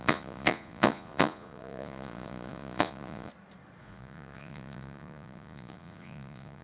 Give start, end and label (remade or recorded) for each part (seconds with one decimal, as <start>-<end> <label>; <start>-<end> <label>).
0.0-3.3 remade; 3.3-3.8 recorded; 3.8-6.6 remade